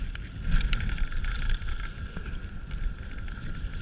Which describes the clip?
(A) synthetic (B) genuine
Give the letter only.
B